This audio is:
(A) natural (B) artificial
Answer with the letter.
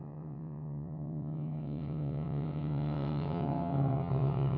B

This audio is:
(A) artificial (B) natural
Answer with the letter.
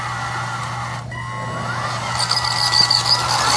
B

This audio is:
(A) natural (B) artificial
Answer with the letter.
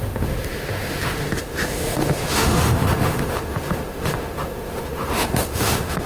B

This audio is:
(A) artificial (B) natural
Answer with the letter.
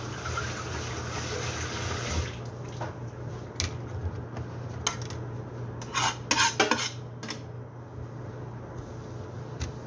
B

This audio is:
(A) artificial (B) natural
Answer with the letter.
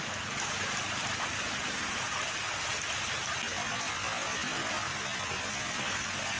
B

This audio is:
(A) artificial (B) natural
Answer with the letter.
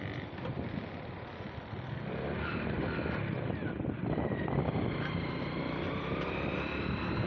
A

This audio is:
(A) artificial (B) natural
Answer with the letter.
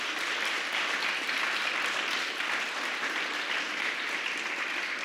A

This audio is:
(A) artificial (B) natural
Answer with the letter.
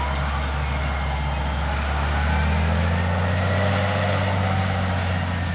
B